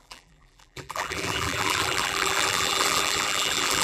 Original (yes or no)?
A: no